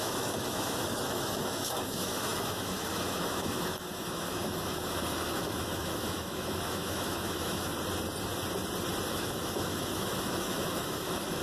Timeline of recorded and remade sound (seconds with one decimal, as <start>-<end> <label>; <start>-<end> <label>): 0.0-7.7 remade; 7.7-9.1 recorded; 9.1-11.4 remade